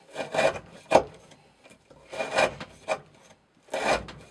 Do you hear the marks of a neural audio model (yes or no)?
no